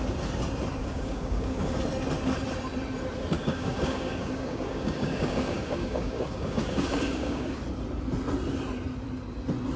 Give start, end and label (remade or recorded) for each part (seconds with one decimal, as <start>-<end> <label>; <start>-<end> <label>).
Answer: 0.0-0.8 recorded; 0.8-1.8 remade; 1.8-3.4 recorded; 3.4-7.6 remade; 7.6-9.8 recorded